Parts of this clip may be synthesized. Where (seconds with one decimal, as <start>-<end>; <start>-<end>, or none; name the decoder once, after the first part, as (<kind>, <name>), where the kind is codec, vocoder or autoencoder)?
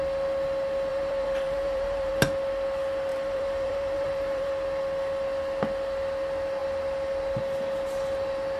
0.9-2.1 (vocoder, BigVGAN v2); 3.1-4.5